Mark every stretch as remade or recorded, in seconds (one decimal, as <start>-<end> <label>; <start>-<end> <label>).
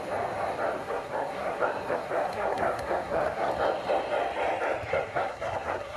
0.0-0.8 recorded; 0.8-3.5 remade; 3.5-4.9 recorded; 4.9-6.0 remade